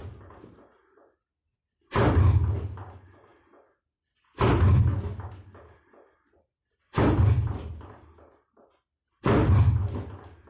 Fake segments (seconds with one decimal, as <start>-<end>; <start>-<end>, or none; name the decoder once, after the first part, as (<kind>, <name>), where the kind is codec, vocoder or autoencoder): none